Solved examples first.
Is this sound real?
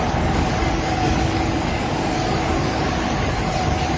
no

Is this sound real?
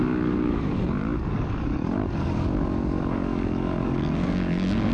no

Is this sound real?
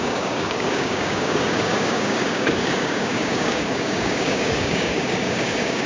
no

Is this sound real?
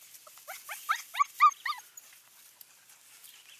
yes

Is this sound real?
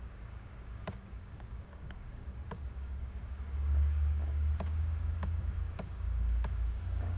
no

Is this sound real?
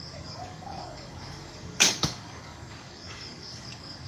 no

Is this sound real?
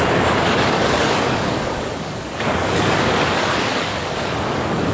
no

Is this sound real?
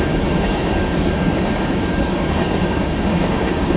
no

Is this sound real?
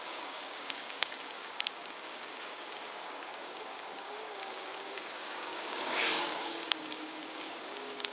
no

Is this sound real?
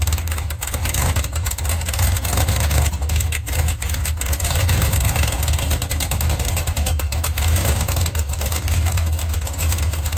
no